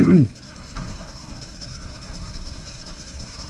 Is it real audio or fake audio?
fake